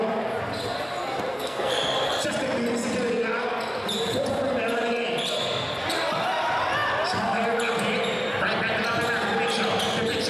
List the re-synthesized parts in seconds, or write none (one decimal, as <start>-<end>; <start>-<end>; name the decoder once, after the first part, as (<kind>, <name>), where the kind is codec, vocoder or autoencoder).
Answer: 1.3-1.8 (codec, SNAC)